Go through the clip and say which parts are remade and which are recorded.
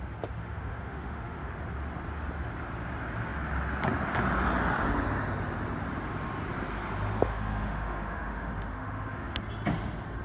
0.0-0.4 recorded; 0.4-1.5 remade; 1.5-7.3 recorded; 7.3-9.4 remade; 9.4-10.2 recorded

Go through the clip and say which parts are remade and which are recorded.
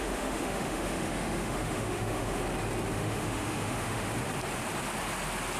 0.0-2.4 remade; 2.4-2.9 recorded; 2.9-4.1 remade; 4.1-5.6 recorded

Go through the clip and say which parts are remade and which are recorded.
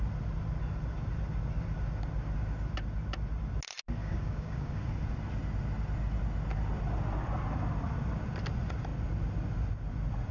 0.0-4.0 recorded; 4.0-4.9 remade; 4.9-10.3 recorded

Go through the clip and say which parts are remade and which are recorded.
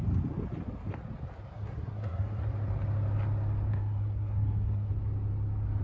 0.0-1.5 recorded; 1.5-2.4 remade; 2.4-3.7 recorded; 3.7-4.9 remade; 4.9-5.8 recorded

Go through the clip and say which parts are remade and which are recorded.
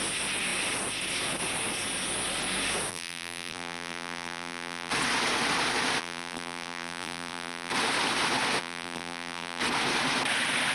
0.0-2.9 recorded; 2.9-4.9 remade; 4.9-6.0 recorded; 6.0-7.7 remade; 7.7-8.6 recorded; 8.6-9.6 remade; 9.6-10.7 recorded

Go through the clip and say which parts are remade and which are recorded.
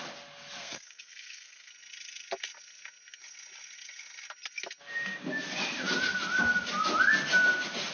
0.0-0.6 recorded; 0.6-1.7 remade; 1.7-7.9 recorded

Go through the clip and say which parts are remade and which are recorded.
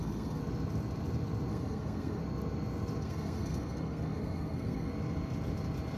0.0-0.4 remade; 0.4-1.5 recorded; 1.5-2.2 remade; 2.2-3.0 recorded; 3.0-4.9 remade; 4.9-6.0 recorded